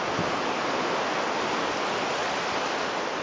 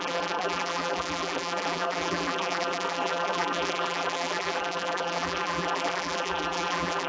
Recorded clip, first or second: first